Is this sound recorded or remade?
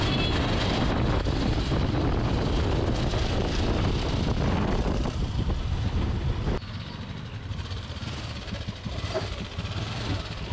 remade